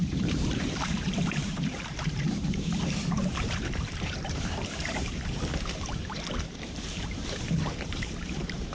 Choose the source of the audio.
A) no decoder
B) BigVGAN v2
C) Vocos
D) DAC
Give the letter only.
B